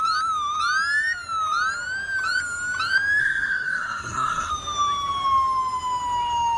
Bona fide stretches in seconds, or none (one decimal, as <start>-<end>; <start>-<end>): 0.0-3.2; 4.5-6.6

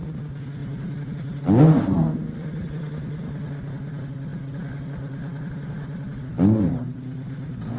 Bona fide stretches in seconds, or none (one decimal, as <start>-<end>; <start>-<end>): 0.0-7.8

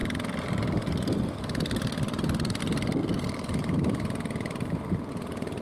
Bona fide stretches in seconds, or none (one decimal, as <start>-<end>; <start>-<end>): 2.6-3.0; 5.1-5.6

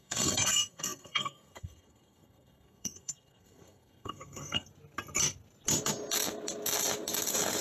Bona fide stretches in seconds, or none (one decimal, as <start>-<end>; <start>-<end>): 4.7-7.6

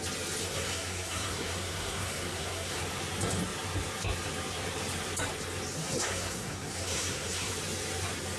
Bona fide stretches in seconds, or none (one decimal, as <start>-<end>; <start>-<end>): 0.0-0.4; 2.8-5.8; 7.5-8.4

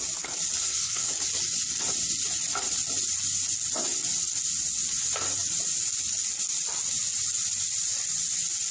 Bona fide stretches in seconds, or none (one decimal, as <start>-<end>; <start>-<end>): 0.0-0.6; 1.1-8.7

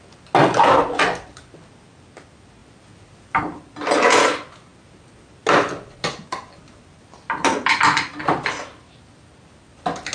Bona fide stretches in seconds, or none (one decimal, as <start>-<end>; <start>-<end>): 0.0-7.8; 8.8-10.1